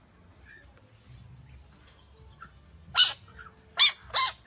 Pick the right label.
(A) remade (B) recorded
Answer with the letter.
B